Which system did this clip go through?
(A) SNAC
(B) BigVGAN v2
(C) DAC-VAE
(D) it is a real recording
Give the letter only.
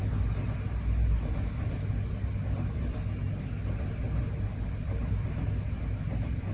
D